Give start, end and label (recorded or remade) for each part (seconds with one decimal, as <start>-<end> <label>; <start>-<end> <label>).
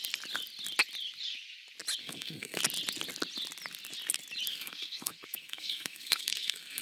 0.0-2.0 recorded; 2.0-2.6 remade; 2.6-4.5 recorded; 4.5-6.8 remade